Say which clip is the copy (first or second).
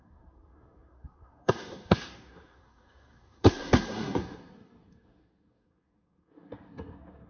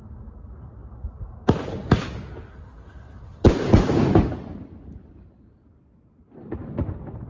first